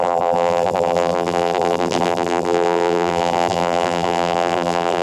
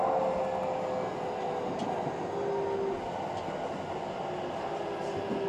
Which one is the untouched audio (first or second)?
second